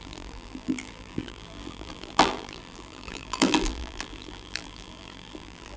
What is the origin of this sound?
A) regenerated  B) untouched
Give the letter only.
A